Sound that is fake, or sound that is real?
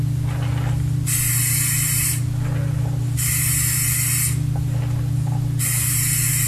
real